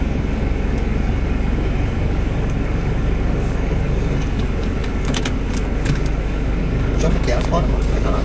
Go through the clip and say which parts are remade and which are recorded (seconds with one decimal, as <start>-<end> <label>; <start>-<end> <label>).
0.0-8.2 remade